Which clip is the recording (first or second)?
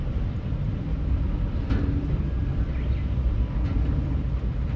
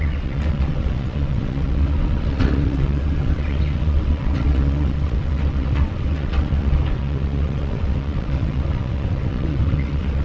first